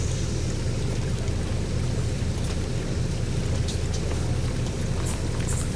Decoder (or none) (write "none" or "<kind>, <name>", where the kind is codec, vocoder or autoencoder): vocoder, BigVGAN v2